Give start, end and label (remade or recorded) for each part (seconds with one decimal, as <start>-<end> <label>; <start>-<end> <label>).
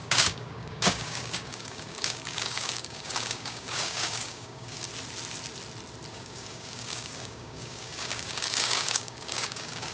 0.0-4.9 remade; 4.9-6.1 recorded; 6.1-9.9 remade